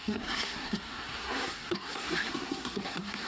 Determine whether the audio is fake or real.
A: fake